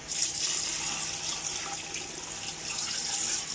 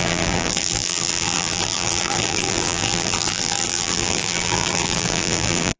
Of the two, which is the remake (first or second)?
second